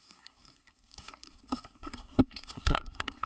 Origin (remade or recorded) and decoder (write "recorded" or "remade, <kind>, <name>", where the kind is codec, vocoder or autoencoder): remade, codec, SNAC